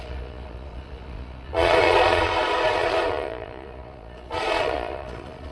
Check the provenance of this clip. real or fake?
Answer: fake